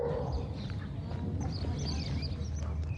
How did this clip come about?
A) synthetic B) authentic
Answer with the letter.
B